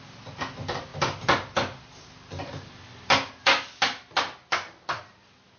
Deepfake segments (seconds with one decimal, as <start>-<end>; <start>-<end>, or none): none